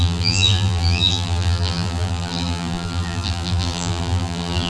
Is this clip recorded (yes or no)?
no